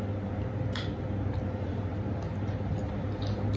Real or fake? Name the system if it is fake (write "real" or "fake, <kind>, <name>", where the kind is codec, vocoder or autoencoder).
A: real